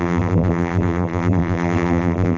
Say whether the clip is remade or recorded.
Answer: remade